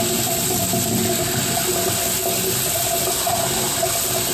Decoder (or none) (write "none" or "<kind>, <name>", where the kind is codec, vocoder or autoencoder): none